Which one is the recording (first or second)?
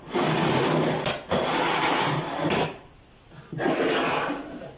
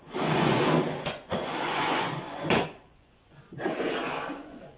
first